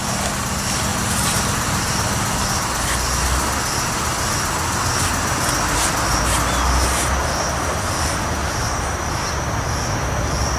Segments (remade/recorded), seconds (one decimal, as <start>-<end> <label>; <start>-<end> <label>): 0.0-0.9 recorded; 0.9-2.4 remade; 2.4-8.4 recorded; 8.4-9.3 remade; 9.3-10.6 recorded